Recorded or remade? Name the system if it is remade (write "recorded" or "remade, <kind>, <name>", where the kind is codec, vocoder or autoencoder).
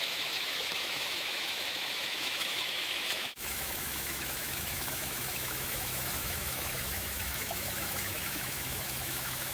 remade, autoencoder, DAC-VAE